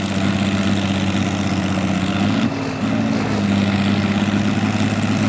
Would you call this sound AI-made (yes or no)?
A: no